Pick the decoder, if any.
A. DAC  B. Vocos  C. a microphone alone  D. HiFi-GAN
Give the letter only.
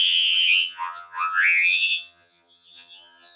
D